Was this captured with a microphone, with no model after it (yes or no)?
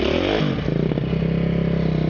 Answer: yes